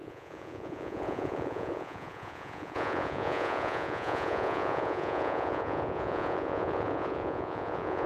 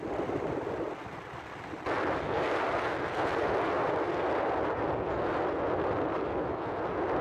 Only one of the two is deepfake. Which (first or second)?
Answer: first